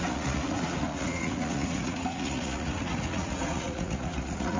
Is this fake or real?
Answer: fake